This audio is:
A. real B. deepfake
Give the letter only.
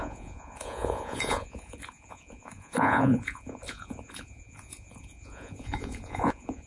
B